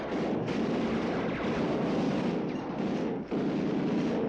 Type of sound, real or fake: real